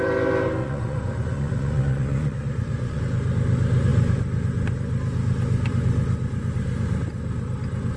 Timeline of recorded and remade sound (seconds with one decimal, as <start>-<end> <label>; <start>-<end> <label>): 0.0-0.6 recorded; 0.6-3.0 remade; 3.0-8.0 recorded